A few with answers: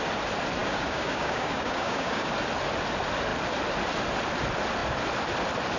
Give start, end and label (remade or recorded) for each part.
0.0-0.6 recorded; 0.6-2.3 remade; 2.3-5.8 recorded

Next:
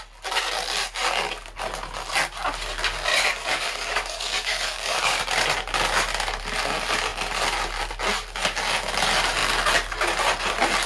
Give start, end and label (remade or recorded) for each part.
0.0-3.1 recorded; 3.1-5.2 remade; 5.2-10.9 recorded

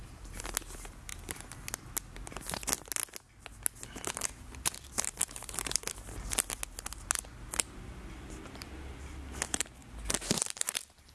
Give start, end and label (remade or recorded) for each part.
0.0-11.1 recorded

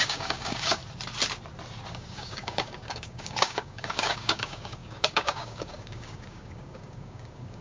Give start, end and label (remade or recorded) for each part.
0.0-0.8 remade; 0.8-1.9 recorded; 1.9-7.6 remade

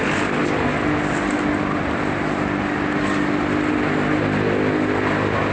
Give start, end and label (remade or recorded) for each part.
0.0-5.5 recorded

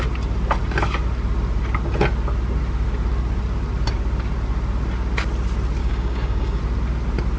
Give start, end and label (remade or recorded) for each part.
0.0-5.8 recorded; 5.8-6.6 remade; 6.6-7.4 recorded

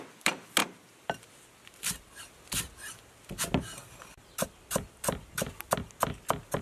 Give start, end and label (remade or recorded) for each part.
0.0-6.6 recorded